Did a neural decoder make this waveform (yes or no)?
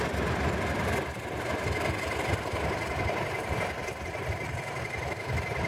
no